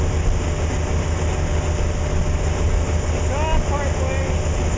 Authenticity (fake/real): real